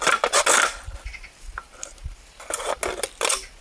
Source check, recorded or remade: recorded